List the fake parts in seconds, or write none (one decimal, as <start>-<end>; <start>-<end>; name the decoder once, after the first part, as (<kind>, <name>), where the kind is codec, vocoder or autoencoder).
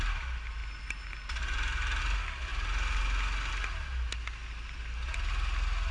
none